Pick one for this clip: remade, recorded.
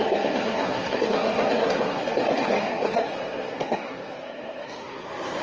remade